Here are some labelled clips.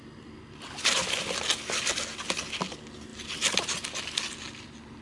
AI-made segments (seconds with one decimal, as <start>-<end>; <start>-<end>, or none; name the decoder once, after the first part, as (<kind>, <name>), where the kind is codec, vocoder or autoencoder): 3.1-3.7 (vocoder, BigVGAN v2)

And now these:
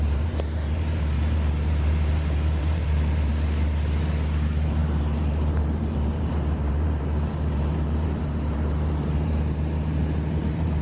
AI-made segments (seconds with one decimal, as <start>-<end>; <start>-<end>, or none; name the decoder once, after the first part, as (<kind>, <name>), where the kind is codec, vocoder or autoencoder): 0.0-3.3 (vocoder, BigVGAN v2); 4.0-10.8

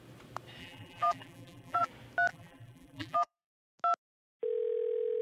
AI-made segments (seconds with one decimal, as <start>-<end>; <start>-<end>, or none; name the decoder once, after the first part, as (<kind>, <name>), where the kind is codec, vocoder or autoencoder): 0.6-1.9 (vocoder, BigVGAN v2); 2.3-3.6